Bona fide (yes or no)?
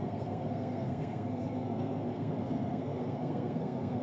no